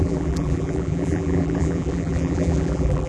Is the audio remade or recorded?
remade